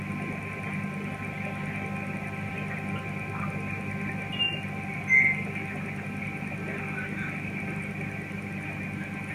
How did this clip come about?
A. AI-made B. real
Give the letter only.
B